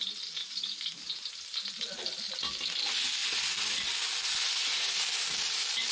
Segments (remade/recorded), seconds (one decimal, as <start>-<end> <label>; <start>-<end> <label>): 0.0-0.4 recorded; 0.4-1.1 remade; 1.1-5.9 recorded